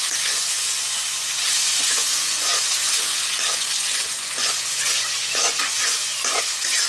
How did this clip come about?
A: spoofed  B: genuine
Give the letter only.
A